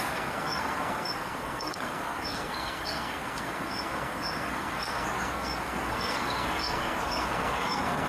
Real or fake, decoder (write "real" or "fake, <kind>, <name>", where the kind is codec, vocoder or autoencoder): fake, codec, SNAC